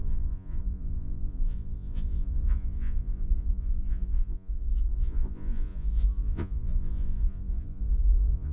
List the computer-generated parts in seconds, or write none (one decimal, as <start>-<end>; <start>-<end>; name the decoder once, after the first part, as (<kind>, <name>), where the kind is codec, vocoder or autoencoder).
0.0-8.5 (vocoder, Vocos)